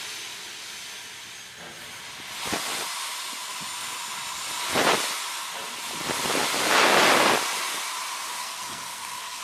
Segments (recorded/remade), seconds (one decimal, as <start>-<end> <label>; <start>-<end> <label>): 0.0-8.4 recorded; 8.4-9.4 remade